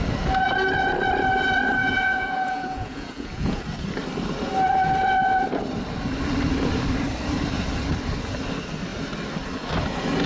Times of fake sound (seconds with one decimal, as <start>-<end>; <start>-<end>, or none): 1.8-3.6